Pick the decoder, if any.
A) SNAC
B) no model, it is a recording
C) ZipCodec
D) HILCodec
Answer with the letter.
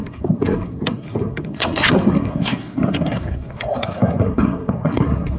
A